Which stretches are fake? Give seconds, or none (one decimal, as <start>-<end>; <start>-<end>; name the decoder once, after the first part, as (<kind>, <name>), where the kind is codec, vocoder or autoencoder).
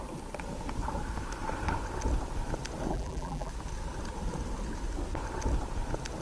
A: 2.9-3.5 (vocoder, BigVGAN v2)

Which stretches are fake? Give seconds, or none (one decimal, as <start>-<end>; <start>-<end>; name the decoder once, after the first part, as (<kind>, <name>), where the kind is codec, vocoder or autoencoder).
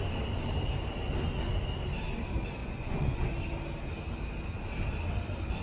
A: 2.6-3.3 (vocoder, Vocos)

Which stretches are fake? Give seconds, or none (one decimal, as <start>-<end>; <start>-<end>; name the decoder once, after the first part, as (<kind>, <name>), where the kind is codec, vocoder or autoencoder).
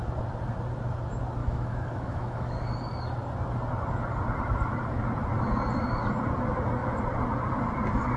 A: 1.4-2.7 (autoencoder, DAC-VAE)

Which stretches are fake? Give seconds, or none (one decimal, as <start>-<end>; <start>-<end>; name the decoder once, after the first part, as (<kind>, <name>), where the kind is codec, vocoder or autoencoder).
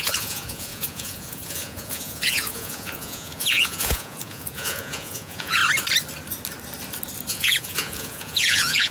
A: 0.0-5.6 (vocoder, Vocos); 7.3-8.9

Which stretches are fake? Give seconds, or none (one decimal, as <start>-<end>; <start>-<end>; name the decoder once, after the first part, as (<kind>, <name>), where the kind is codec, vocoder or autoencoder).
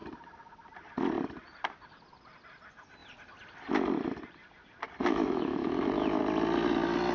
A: 5.0-6.2 (autoencoder, DAC-VAE)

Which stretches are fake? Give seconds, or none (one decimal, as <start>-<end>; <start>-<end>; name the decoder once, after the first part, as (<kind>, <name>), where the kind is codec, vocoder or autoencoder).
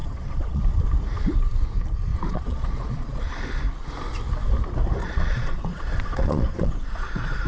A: 0.0-0.6 (vocoder, Vocos); 2.1-3.3; 5.0-7.5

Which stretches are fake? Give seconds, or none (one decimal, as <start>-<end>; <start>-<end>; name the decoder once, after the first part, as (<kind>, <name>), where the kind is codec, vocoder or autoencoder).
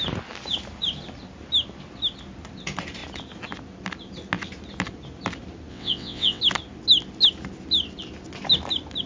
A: 5.7-6.4 (vocoder, WaveNeXt)